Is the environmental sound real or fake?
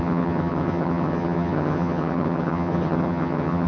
fake